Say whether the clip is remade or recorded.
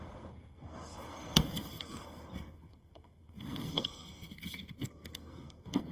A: remade